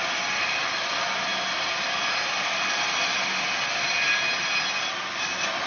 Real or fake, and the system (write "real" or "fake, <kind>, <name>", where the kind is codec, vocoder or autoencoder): real